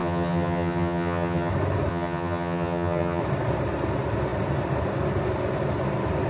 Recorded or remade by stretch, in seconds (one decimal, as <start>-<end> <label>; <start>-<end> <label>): 0.0-1.5 remade; 1.5-1.9 recorded; 1.9-3.2 remade; 3.2-6.3 recorded